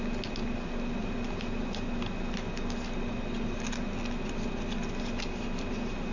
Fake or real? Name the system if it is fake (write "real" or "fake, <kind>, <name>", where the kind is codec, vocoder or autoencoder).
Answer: real